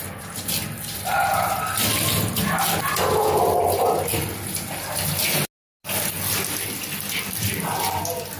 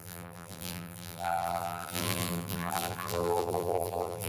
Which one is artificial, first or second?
second